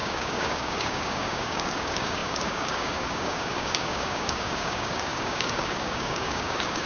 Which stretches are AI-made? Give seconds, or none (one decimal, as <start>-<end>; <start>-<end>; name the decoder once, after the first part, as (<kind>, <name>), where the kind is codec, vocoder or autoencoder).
0.0-6.9 (codec, DAC)